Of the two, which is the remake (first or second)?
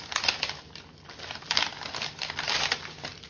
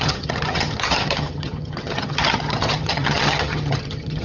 second